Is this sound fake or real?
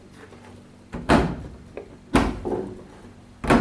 real